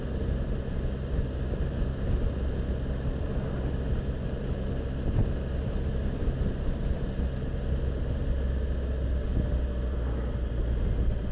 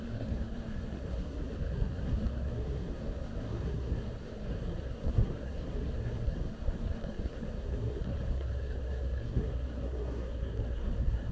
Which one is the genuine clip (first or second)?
first